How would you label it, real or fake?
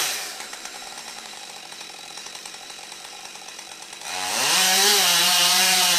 fake